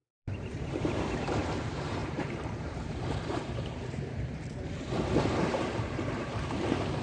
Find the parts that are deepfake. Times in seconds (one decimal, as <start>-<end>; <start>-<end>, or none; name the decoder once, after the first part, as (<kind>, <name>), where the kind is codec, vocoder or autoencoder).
0.0-4.1 (vocoder, BigVGAN v2); 5.4-7.0